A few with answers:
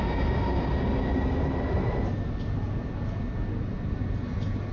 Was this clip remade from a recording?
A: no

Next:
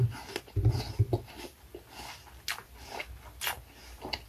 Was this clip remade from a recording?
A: no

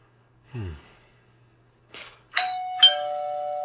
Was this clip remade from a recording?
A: yes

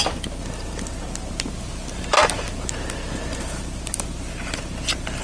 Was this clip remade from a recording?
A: no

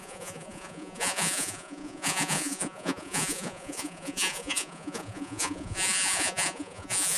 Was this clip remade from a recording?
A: yes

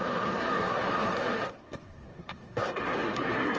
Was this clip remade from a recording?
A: yes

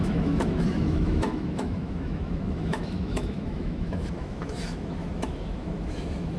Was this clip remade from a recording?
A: yes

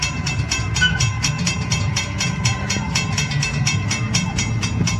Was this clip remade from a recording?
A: yes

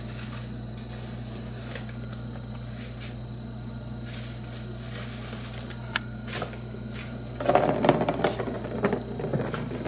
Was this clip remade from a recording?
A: no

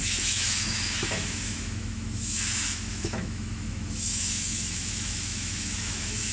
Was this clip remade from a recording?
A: yes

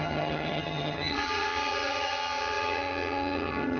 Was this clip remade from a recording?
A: yes